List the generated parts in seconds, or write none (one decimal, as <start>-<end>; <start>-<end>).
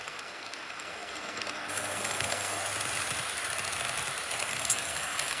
0.0-2.6; 4.5-5.4